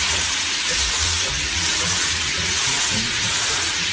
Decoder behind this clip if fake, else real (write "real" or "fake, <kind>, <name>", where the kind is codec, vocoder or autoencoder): fake, vocoder, Vocos